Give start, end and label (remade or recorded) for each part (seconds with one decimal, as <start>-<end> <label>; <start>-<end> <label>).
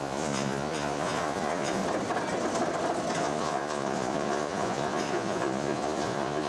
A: 0.0-1.8 remade; 1.8-3.2 recorded; 3.2-6.5 remade